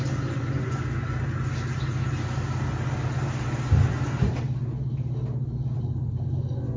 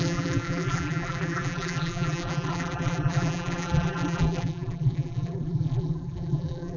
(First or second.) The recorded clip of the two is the first